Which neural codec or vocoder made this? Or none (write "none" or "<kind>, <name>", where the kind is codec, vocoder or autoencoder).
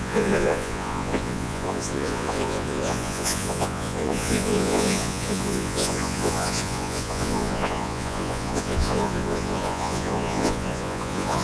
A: vocoder, Vocos